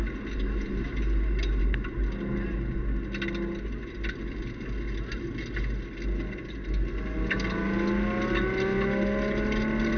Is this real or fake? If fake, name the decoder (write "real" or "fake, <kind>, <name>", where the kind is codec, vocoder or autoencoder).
real